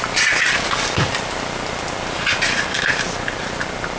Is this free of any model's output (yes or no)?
yes